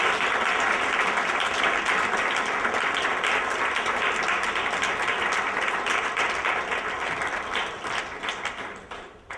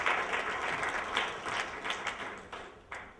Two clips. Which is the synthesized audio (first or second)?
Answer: first